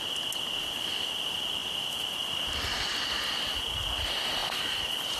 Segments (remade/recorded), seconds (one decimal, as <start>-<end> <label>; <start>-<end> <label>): 0.0-4.4 recorded; 4.4-5.2 remade